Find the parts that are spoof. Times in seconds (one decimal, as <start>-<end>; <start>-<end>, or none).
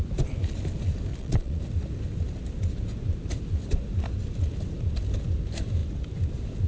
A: 1.1-1.6